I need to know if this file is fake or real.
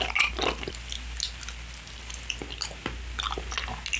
real